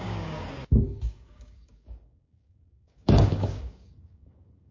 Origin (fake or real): fake